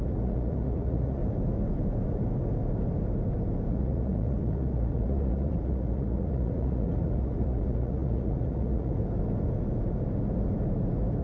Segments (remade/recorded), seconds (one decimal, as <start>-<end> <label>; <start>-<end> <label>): 0.0-1.2 remade; 1.2-3.7 recorded; 3.7-9.0 remade; 9.0-11.2 recorded